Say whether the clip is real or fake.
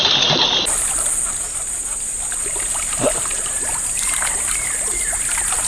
real